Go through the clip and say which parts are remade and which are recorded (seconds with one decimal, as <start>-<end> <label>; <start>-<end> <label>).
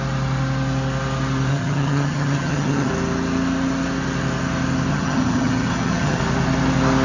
0.0-1.5 recorded; 1.5-2.9 remade; 2.9-4.9 recorded; 4.9-6.2 remade; 6.2-7.0 recorded